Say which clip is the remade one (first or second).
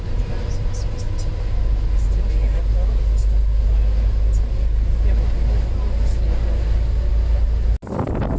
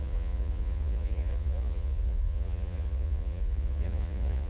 second